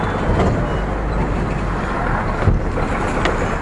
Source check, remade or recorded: recorded